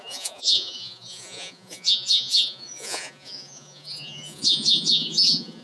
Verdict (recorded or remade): remade